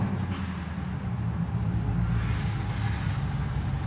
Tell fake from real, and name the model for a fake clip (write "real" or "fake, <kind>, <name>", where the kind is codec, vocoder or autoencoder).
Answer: real